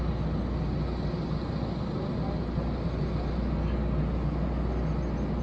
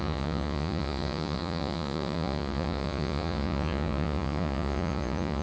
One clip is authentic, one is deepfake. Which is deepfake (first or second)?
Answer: second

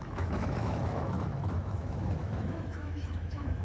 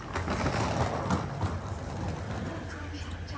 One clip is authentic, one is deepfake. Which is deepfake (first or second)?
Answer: first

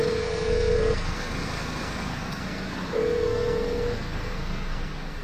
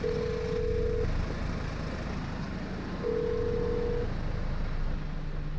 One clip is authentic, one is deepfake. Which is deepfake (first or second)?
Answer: first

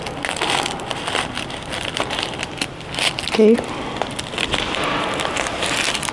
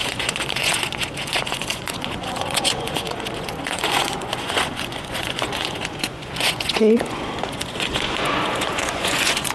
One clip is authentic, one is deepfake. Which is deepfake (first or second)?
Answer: second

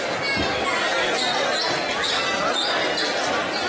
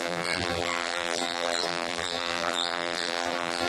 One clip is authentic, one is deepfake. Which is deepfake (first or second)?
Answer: second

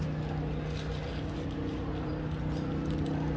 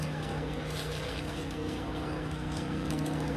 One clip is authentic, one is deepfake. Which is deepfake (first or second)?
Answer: second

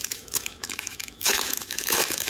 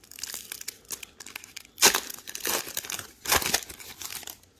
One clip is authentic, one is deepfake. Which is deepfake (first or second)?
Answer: first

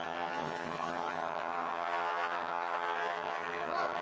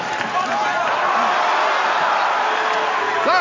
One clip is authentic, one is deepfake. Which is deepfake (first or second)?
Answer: first